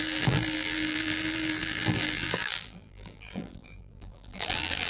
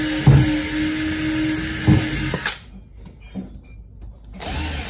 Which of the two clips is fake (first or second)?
first